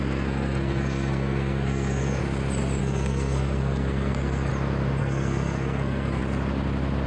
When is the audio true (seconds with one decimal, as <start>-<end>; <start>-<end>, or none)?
2.2-2.8; 4.5-5.0; 6.2-7.1